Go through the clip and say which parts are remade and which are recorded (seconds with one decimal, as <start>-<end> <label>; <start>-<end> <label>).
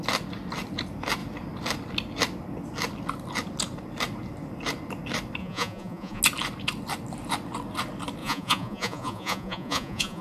0.0-5.4 recorded; 5.4-6.2 remade; 6.2-8.2 recorded; 8.2-10.2 remade